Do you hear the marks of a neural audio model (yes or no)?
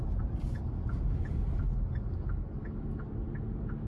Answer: no